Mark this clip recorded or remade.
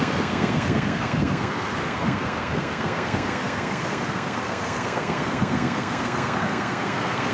remade